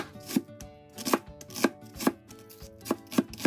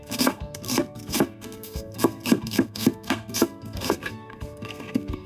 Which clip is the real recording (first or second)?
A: first